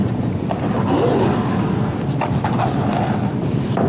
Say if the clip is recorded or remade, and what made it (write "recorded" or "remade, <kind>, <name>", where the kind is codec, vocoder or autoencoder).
recorded